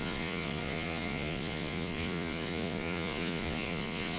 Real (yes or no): no